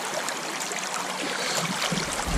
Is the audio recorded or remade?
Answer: recorded